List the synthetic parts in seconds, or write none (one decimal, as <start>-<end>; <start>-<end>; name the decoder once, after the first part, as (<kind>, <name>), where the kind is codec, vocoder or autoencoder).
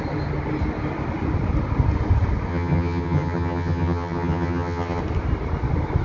2.5-5.0 (vocoder, HiFi-GAN)